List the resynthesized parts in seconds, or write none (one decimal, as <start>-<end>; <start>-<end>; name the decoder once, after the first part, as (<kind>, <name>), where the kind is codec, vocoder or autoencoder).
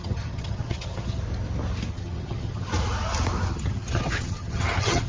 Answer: 0.0-1.2 (vocoder, HiFi-GAN); 1.9-2.7; 3.5-5.1